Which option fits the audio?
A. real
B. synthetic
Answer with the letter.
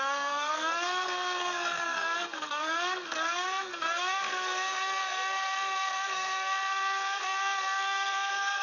B